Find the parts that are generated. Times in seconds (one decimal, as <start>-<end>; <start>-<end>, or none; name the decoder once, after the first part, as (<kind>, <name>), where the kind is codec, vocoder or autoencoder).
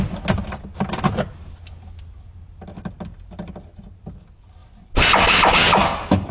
none